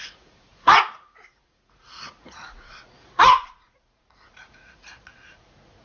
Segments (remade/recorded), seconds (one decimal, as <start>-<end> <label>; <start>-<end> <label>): 0.0-5.8 remade